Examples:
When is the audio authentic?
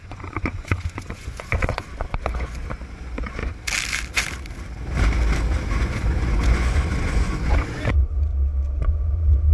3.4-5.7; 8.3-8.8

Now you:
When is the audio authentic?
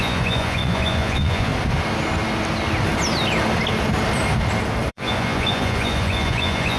1.5-4.9